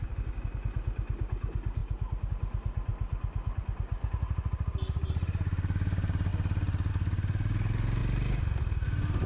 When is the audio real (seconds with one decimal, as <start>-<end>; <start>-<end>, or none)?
0.0-9.3